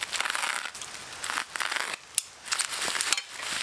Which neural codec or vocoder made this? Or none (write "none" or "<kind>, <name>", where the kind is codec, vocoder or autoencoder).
none